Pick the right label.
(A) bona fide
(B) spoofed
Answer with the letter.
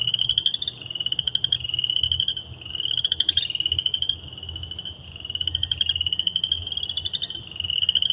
A